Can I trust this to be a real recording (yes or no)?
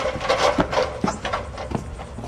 yes